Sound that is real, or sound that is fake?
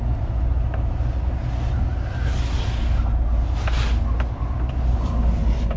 real